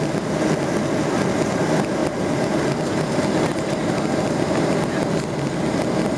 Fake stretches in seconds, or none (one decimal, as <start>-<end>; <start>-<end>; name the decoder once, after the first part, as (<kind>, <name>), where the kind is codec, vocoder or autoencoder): none